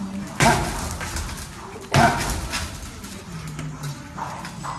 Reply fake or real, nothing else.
real